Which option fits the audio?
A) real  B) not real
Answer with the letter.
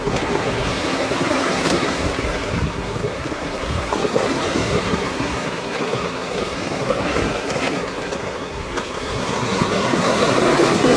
B